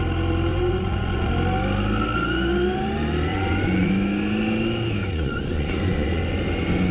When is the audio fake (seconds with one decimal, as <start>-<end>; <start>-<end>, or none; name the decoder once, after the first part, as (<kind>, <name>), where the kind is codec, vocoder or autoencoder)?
0.5-1.3 (vocoder, Vocos); 3.3-3.9; 5.0-6.2